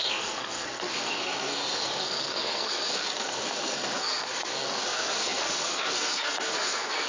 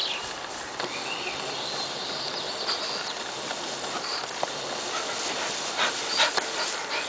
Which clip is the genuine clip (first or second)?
second